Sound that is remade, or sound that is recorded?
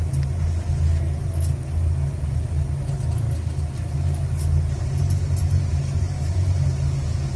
recorded